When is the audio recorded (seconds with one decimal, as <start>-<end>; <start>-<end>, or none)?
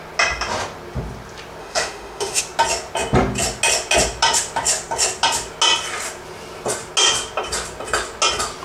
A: 0.0-1.6; 2.4-8.6